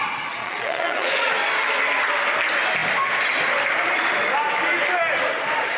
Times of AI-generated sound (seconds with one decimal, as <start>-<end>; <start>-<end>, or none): 0.4-1.3